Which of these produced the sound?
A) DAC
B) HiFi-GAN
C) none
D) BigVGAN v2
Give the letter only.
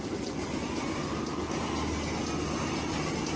C